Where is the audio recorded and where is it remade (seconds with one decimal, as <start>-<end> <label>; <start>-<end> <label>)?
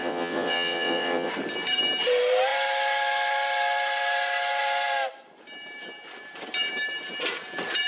0.0-1.3 remade; 1.3-7.9 recorded